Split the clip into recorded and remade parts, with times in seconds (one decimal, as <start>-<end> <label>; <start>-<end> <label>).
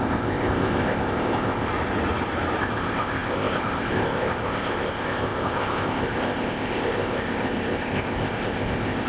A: 0.0-1.7 remade; 1.7-2.6 recorded; 2.6-9.1 remade